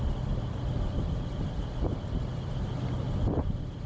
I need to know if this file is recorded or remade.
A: recorded